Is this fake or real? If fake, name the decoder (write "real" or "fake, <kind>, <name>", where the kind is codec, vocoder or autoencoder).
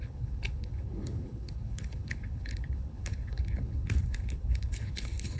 fake, codec, HILCodec